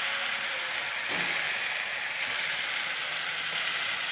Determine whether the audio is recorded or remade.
recorded